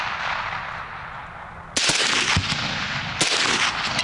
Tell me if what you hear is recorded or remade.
recorded